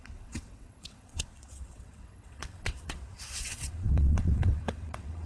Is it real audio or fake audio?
fake